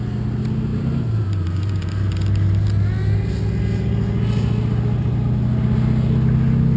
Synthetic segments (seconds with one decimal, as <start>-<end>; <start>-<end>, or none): 0.7-1.7